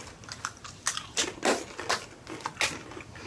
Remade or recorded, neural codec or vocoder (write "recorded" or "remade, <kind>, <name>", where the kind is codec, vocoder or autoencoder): recorded